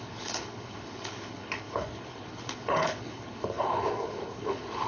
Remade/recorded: remade